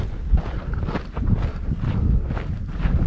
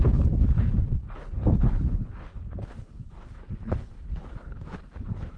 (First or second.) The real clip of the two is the first